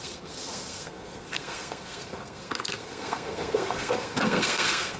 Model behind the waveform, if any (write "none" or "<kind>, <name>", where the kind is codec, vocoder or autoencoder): codec, SNAC